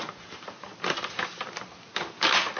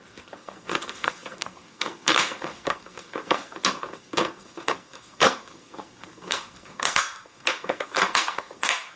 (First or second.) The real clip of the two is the first